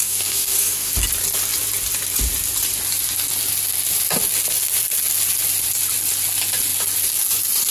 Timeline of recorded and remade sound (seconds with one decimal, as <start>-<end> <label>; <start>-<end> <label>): 0.0-0.9 remade; 0.9-7.7 recorded